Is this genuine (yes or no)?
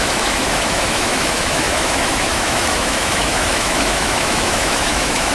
no